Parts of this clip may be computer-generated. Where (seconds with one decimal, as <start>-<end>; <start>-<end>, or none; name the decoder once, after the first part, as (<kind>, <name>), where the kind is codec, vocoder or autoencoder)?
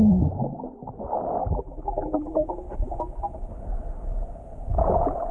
1.4-2.5 (vocoder, BigVGAN v2)